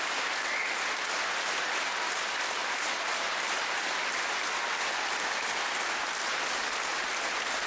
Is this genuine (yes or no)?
yes